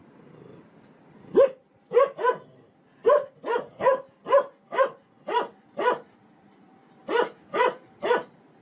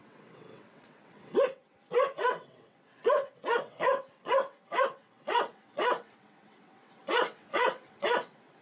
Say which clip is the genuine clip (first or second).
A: first